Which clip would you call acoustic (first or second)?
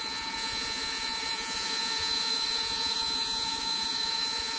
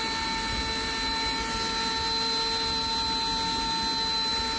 second